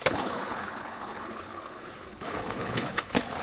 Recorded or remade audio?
remade